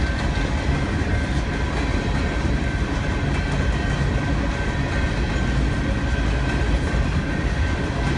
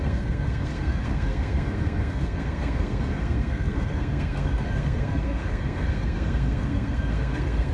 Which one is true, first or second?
first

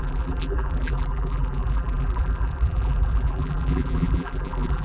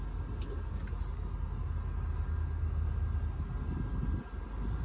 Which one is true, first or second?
second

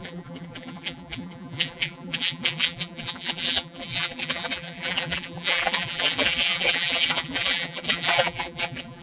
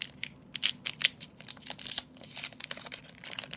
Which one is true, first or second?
second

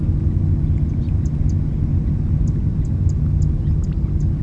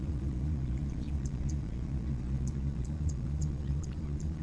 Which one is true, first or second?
first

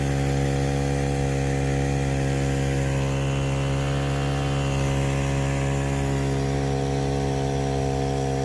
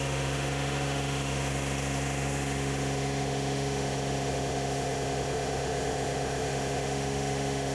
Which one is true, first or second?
first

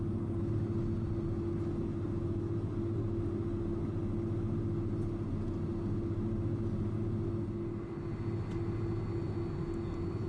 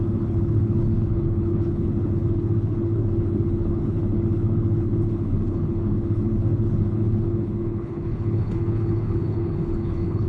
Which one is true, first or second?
first